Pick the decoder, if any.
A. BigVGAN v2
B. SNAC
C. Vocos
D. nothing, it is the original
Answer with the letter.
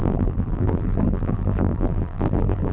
A